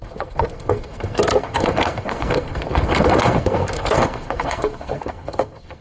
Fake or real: fake